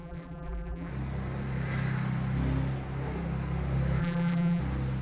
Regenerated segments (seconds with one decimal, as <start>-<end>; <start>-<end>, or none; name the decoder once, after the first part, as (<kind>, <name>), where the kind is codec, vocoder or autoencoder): 0.0-0.9 (vocoder, BigVGAN v2); 4.0-4.6